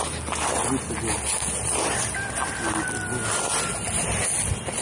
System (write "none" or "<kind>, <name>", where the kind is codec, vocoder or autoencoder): none